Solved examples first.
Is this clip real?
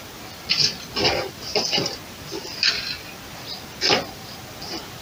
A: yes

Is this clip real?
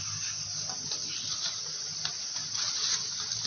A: yes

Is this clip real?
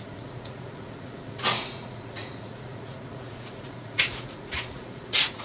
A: no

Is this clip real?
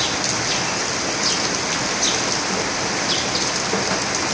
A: yes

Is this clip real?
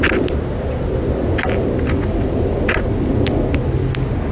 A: yes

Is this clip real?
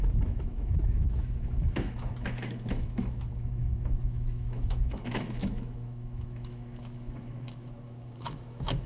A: no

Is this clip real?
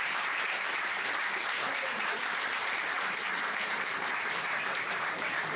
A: no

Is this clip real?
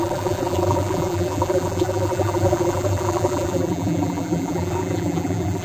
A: no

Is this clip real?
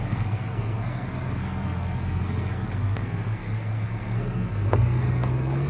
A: no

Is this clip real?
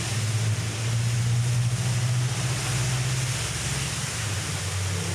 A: yes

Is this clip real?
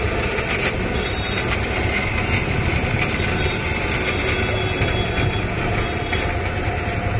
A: yes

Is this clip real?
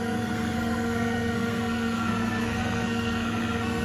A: no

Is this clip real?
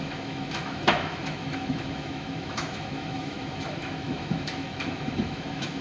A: no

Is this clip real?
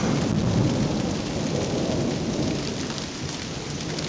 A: yes